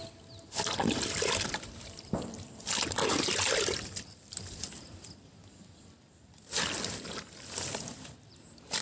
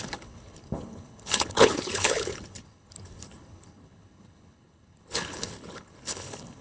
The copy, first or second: second